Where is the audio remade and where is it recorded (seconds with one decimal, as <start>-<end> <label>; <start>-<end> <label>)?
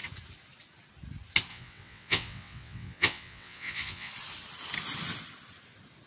0.0-1.5 recorded; 1.5-4.1 remade; 4.1-6.1 recorded